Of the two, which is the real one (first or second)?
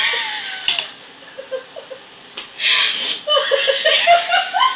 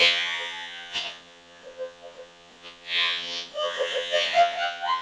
first